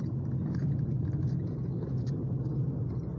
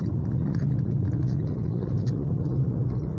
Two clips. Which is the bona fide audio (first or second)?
first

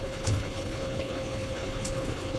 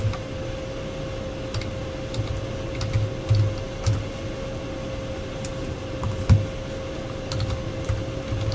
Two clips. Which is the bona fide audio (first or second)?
second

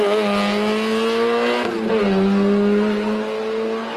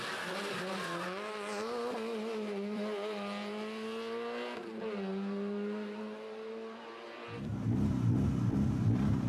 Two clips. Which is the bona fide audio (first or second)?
first